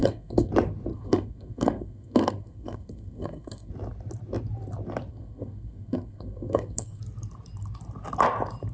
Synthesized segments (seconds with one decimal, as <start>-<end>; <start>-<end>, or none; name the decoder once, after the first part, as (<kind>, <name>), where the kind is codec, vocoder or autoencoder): 0.0-0.5 (codec, SNAC); 0.9-3.7; 5.1-7.0